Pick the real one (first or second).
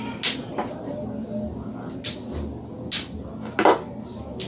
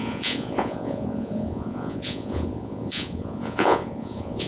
first